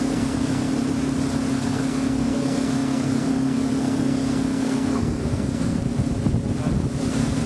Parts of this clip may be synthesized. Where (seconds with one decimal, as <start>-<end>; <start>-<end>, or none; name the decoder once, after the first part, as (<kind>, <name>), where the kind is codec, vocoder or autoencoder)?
0.0-0.7 (codec, SNAC); 1.5-5.8; 7.1-7.5